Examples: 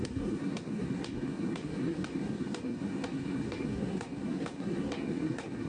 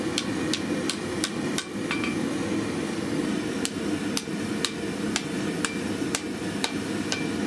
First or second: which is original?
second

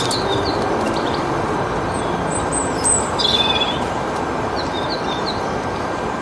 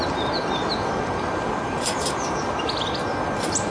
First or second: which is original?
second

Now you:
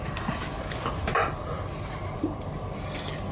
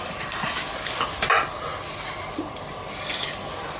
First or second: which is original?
second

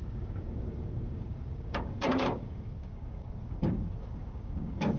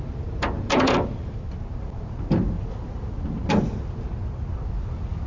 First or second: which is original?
second